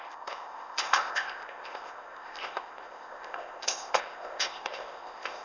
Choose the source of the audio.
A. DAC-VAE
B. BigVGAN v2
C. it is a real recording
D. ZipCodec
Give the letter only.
D